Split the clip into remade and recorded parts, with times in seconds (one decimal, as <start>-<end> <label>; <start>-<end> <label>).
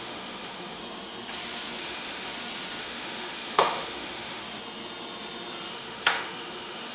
0.0-0.8 remade; 0.8-1.8 recorded; 1.8-2.3 remade; 2.3-2.8 recorded; 2.8-4.4 remade; 4.4-5.7 recorded; 5.7-6.9 remade